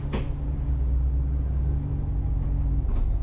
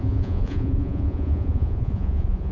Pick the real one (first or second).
first